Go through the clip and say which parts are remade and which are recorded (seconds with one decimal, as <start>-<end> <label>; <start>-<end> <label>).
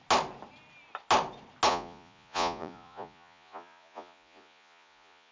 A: 0.0-1.7 recorded; 1.7-5.3 remade